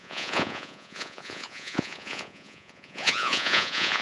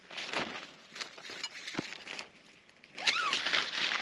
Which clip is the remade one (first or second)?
first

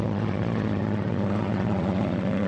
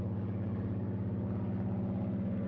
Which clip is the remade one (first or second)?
first